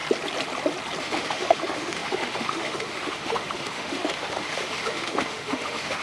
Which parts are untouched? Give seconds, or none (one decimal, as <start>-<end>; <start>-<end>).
0.0-1.0